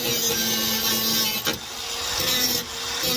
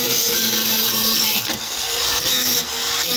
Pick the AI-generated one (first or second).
second